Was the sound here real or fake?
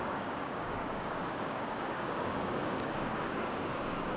fake